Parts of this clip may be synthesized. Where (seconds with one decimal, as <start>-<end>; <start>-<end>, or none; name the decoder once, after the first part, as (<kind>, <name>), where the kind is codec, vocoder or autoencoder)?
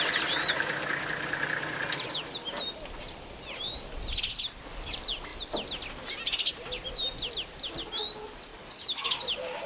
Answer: none